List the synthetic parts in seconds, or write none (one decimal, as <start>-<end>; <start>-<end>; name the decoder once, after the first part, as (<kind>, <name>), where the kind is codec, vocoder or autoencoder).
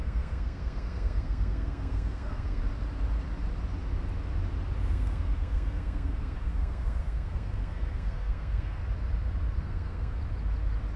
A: 0.0-2.6 (codec, SNAC); 4.9-8.8; 9.6-10.2